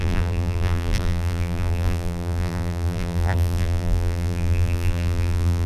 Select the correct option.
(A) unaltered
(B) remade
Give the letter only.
B